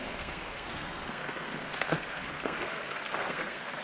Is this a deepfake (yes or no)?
yes